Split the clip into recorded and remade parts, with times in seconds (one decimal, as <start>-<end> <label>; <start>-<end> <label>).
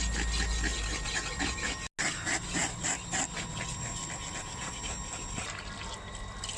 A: 0.0-6.6 recorded